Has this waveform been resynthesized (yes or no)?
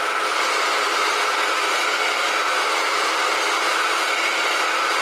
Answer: no